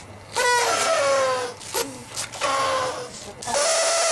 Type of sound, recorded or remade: recorded